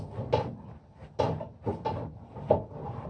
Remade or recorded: recorded